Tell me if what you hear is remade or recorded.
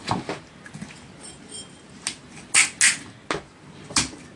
recorded